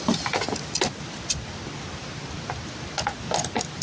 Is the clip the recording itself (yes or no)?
yes